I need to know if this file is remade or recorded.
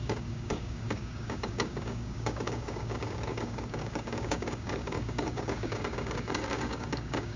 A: remade